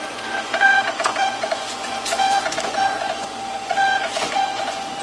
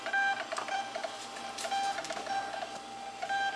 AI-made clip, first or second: first